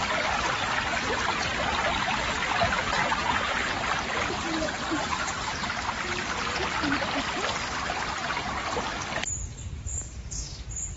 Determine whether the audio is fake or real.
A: real